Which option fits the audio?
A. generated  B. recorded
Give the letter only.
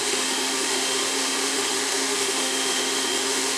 A